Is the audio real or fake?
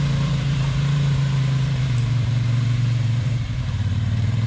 fake